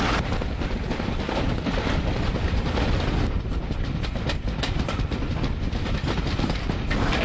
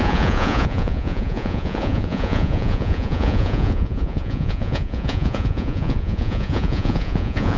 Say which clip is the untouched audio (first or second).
first